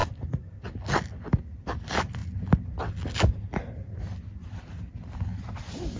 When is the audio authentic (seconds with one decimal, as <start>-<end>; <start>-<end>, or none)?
0.0-6.0